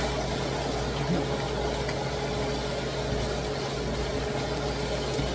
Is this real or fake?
real